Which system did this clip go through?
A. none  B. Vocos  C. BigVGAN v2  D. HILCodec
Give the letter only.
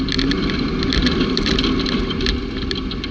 A